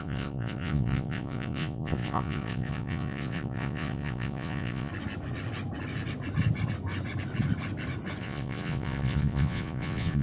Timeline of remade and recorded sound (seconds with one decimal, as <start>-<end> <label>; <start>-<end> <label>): 0.0-4.9 remade; 4.9-8.2 recorded; 8.2-10.2 remade